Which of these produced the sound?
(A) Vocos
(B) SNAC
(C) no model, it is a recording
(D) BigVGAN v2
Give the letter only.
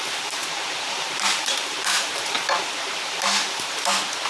D